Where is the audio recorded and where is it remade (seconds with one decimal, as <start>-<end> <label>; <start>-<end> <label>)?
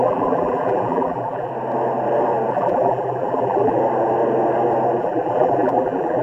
0.0-1.5 remade; 1.5-2.5 recorded; 2.5-3.8 remade; 3.8-5.0 recorded; 5.0-6.2 remade